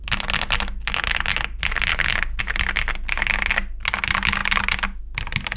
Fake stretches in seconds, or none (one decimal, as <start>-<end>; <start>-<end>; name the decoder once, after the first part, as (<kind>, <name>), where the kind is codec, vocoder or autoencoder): 1.9-2.4 (codec, HILCodec)